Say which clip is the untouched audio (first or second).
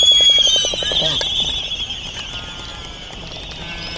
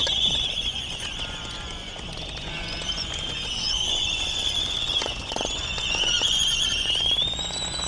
first